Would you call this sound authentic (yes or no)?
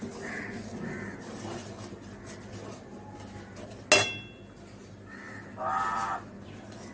yes